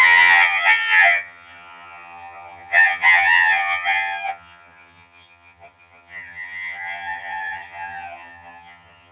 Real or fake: fake